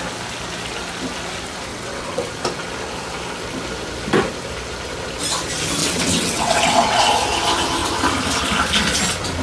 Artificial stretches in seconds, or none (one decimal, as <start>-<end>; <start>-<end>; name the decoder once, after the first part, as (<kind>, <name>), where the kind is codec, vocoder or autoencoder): 1.7-2.3 (vocoder, WaveNeXt); 5.8-7.0